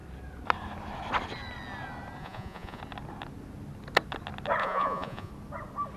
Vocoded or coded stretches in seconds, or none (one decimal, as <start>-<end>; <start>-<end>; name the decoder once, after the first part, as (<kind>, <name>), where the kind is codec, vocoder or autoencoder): 2.2-2.8 (vocoder, Vocos); 4.6-5.3